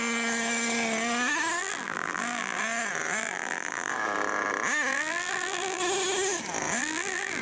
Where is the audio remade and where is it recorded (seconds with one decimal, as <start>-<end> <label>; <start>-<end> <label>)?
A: 0.0-1.6 recorded; 1.6-2.6 remade; 2.6-3.2 recorded; 3.2-3.9 remade; 3.9-4.9 recorded; 4.9-5.8 remade; 5.8-6.8 recorded; 6.8-7.4 remade